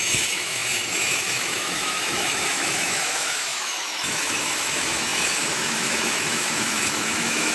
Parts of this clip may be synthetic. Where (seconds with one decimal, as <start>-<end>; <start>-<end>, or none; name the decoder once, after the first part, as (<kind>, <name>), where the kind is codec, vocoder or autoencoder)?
0.0-7.5 (autoencoder, DAC-VAE)

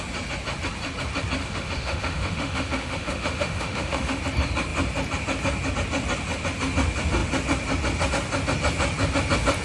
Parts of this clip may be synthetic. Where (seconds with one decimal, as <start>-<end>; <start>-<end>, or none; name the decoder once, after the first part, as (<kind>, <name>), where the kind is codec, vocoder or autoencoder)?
1.4-4.2 (autoencoder, DAC-VAE)

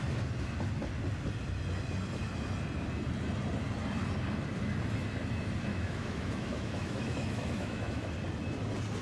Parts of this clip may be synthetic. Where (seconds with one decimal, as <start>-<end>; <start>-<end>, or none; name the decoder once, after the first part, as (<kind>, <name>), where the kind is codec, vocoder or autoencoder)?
5.7-8.1 (autoencoder, DAC-VAE)

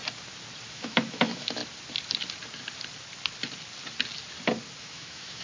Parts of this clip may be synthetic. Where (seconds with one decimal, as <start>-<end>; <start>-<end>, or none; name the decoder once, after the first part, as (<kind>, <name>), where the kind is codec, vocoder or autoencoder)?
0.7-1.6 (autoencoder, DAC-VAE); 4.8-5.4

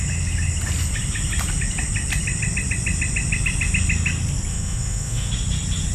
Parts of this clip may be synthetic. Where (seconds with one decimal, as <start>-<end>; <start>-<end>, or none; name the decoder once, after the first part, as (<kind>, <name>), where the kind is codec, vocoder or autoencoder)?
4.5-5.3 (autoencoder, DAC-VAE)

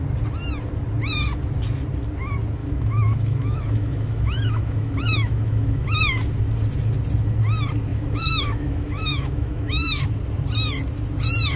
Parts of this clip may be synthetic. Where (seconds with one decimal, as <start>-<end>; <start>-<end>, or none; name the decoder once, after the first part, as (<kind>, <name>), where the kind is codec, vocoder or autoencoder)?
2.6-6.0 (autoencoder, DAC-VAE); 7.9-10.0